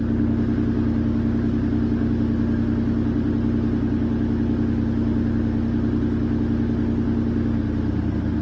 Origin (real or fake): real